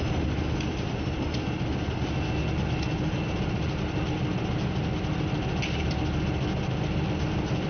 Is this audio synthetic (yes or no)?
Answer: no